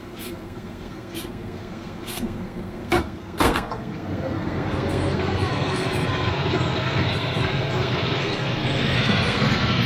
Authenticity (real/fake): fake